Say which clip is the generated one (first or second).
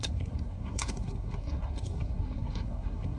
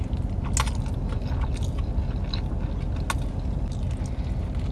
first